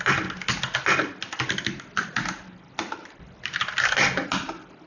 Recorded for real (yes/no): yes